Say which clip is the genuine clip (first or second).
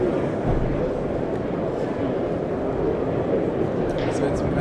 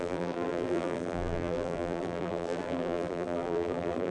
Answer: first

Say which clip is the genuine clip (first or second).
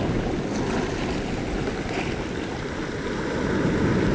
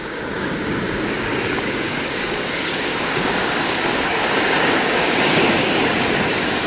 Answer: first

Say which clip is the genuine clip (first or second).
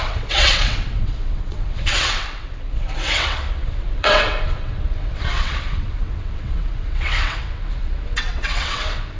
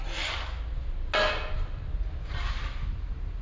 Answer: second